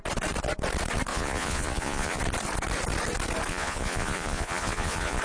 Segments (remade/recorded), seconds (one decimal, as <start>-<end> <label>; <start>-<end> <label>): 0.0-1.1 recorded; 1.1-2.2 remade; 2.2-3.5 recorded; 3.5-5.2 remade